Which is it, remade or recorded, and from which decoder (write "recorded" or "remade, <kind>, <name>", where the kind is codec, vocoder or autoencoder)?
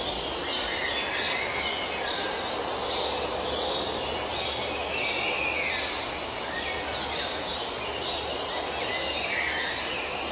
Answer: recorded